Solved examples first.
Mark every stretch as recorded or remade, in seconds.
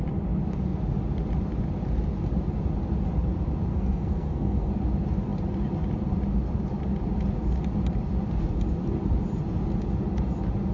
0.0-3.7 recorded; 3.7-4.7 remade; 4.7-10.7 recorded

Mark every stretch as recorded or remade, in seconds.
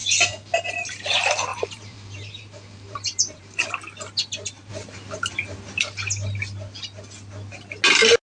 0.0-1.5 recorded; 1.5-3.7 remade; 3.7-8.2 recorded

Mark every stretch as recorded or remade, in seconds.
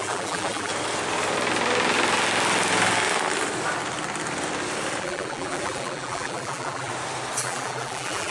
0.0-0.7 remade; 0.7-5.0 recorded; 5.0-6.9 remade; 6.9-7.4 recorded; 7.4-8.3 remade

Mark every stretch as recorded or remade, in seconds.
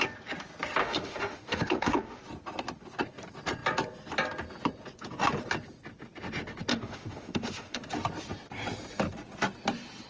0.0-0.8 recorded; 0.8-2.2 remade; 2.2-6.7 recorded; 6.7-7.8 remade; 7.8-10.1 recorded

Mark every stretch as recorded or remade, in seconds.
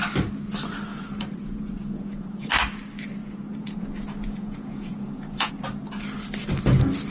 0.0-0.9 recorded; 0.9-2.5 remade; 2.5-3.2 recorded; 3.2-5.5 remade; 5.5-7.1 recorded